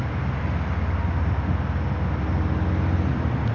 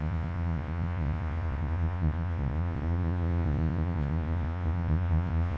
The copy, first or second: second